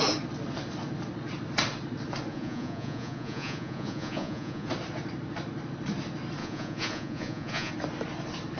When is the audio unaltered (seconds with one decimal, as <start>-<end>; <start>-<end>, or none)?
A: 0.0-2.3; 4.7-6.4; 7.7-8.6